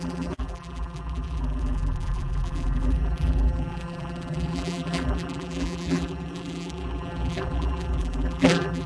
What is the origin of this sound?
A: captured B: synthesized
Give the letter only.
B